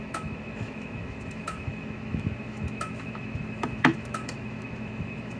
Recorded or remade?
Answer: remade